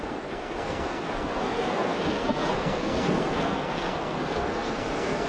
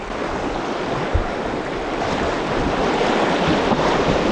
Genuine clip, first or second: second